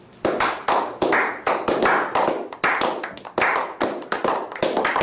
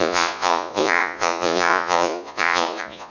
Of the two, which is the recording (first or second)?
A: first